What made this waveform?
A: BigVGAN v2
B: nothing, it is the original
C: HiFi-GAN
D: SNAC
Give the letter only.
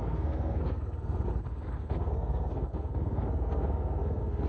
D